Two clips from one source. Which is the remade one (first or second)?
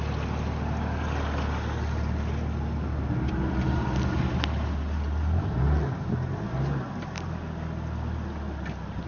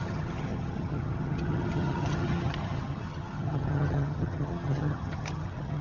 second